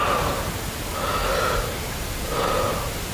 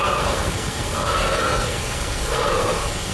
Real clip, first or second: first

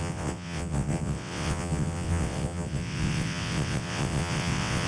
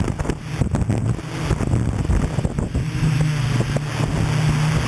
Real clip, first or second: second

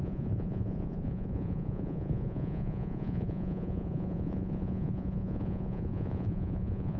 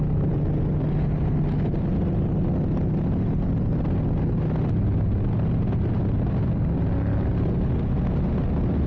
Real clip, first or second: second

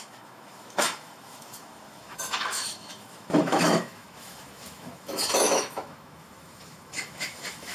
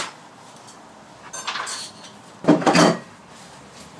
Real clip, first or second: second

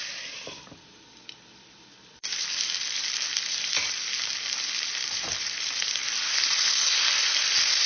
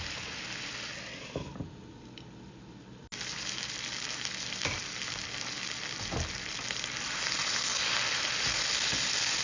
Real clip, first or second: second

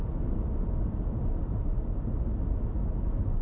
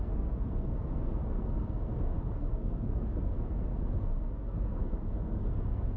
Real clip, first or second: first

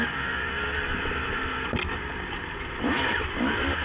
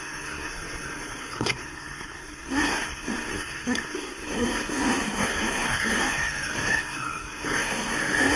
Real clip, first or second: first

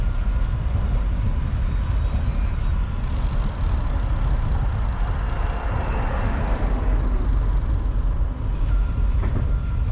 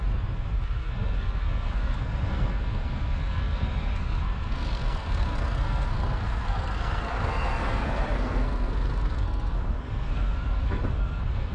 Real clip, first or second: first